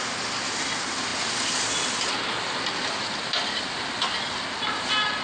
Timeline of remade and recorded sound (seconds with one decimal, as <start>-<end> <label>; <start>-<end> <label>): 0.0-5.2 recorded